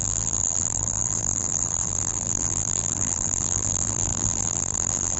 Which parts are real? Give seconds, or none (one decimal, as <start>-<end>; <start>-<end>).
none